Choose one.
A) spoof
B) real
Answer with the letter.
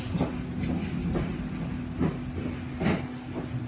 B